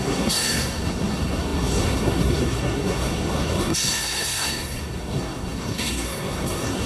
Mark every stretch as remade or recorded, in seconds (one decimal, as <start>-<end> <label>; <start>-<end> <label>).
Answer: 0.0-6.9 remade